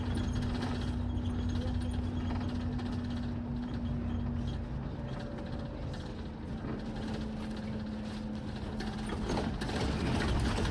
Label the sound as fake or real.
real